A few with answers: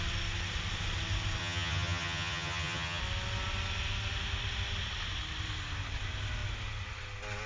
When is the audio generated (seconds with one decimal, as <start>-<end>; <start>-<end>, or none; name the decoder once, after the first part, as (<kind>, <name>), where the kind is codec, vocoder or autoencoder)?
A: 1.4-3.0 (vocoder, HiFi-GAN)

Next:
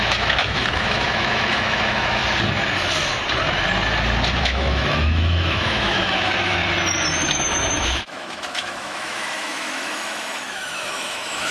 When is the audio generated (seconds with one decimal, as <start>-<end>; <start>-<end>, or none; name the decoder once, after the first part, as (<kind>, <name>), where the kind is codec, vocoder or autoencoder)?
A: 0.0-2.2 (autoencoder, DAC-VAE); 4.4-6.6; 7.3-11.5

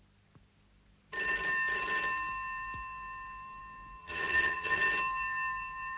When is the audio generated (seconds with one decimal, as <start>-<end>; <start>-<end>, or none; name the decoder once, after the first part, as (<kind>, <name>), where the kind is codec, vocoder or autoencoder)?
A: 4.0-4.8 (vocoder, HiFi-GAN)

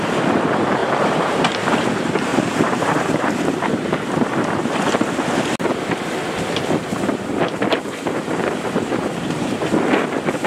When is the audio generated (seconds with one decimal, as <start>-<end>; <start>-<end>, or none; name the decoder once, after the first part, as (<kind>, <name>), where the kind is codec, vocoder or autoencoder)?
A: 0.8-1.9 (vocoder, BigVGAN v2); 2.3-3.7; 7.3-9.7

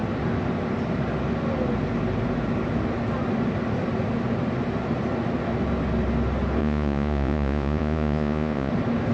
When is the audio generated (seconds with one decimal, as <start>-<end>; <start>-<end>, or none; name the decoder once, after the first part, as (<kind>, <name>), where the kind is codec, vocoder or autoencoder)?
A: 6.6-8.7 (vocoder, Vocos)

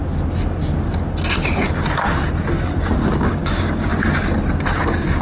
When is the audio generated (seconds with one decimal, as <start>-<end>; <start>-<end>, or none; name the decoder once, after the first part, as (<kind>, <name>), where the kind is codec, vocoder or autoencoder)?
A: 3.1-3.9 (codec, DAC); 4.8-5.2